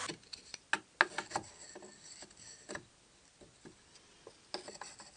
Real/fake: real